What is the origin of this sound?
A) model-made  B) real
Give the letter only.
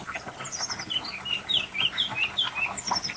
B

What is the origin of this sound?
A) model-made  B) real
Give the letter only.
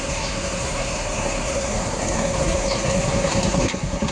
A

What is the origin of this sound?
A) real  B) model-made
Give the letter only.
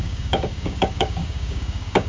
B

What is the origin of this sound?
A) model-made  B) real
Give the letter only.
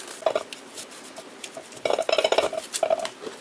B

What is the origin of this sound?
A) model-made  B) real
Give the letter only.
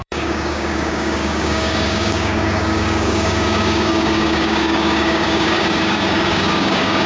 A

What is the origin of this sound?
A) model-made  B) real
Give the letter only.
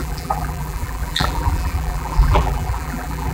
A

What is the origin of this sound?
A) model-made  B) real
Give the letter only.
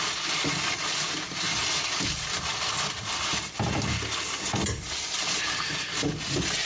B